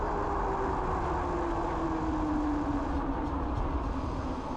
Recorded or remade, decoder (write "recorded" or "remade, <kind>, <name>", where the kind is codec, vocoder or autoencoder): recorded